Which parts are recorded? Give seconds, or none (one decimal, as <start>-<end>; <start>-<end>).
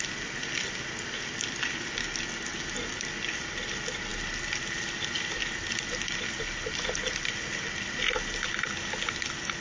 0.0-9.6